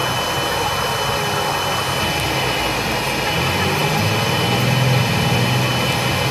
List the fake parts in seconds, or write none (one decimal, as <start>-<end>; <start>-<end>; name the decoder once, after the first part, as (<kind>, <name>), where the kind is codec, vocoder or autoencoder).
none